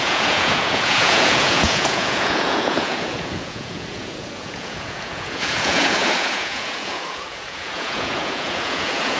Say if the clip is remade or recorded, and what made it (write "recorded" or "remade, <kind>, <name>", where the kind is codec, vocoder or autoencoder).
remade, vocoder, Vocos